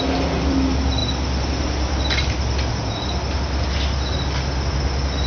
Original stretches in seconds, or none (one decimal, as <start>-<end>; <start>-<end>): 0.0-5.3